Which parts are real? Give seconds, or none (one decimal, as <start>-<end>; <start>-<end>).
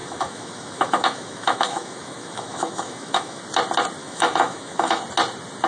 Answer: 3.4-4.0; 5.0-5.7